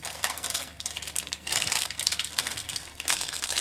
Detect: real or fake fake